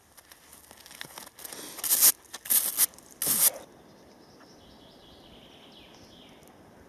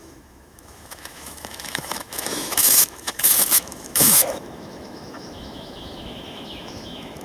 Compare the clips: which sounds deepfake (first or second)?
second